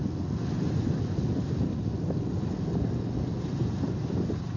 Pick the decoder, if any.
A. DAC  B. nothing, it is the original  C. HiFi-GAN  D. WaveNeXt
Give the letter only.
B